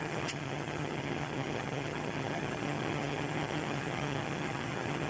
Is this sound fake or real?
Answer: fake